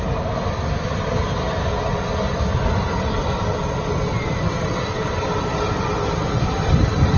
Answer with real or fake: real